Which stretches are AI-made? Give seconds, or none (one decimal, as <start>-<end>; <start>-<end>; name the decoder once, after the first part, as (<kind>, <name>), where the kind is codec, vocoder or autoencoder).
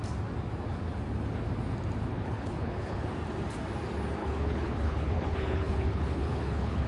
2.1-3.1 (codec, HILCodec); 4.2-6.9